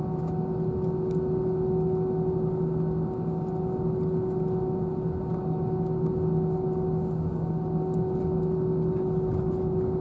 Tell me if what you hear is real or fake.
real